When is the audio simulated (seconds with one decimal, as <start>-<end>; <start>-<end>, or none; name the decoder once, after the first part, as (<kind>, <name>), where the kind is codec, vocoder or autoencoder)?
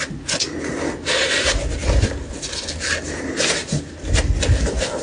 3.6-4.1 (vocoder, BigVGAN v2)